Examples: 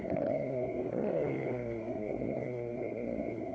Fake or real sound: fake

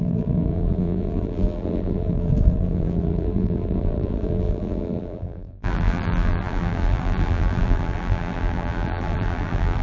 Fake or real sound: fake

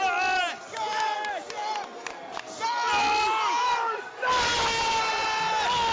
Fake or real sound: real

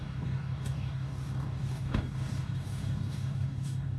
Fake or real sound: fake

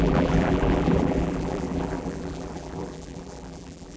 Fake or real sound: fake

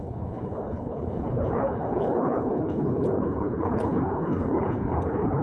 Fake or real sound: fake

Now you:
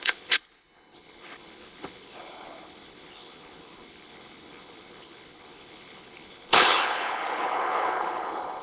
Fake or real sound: fake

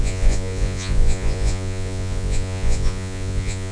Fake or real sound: fake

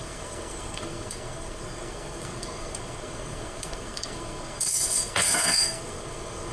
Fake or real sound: fake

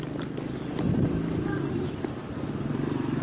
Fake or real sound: real